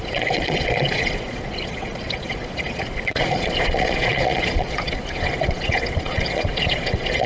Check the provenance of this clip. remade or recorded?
remade